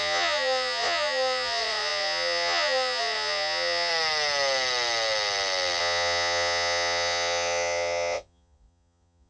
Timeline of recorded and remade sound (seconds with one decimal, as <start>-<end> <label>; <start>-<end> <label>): 0.0-3.9 remade; 3.9-5.8 recorded; 5.8-9.3 remade